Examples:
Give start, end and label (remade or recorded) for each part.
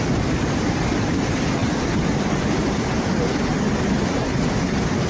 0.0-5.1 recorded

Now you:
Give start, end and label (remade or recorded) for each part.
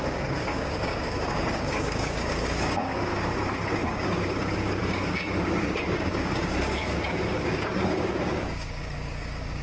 0.0-3.1 remade; 3.1-3.7 recorded; 3.7-9.6 remade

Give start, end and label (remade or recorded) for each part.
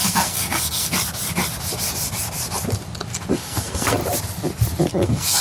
0.0-0.9 remade; 0.9-3.3 recorded; 3.3-4.0 remade; 4.0-4.9 recorded; 4.9-5.4 remade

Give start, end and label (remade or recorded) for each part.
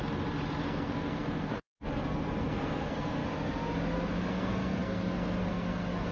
0.0-0.6 recorded; 0.6-3.2 remade; 3.2-4.3 recorded; 4.3-6.1 remade